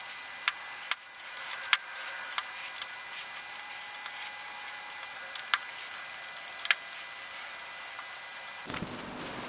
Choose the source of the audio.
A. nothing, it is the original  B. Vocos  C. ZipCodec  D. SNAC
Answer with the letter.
A